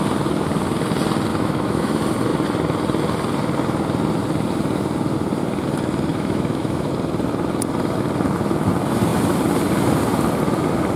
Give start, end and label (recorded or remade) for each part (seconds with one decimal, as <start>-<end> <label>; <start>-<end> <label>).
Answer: 0.0-1.3 recorded; 1.3-1.9 remade; 1.9-6.1 recorded; 6.1-6.9 remade; 6.9-11.0 recorded